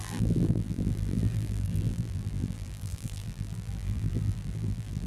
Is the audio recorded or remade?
remade